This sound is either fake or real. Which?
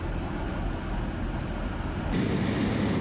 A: real